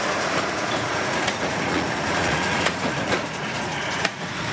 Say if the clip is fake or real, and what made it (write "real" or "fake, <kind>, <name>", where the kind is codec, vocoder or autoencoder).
fake, vocoder, Vocos